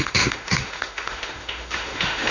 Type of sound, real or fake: fake